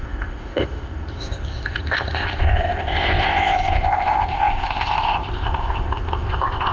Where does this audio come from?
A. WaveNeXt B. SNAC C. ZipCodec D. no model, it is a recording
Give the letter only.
C